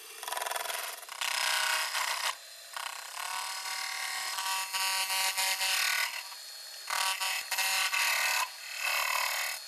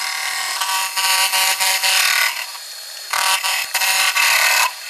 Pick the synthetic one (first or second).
second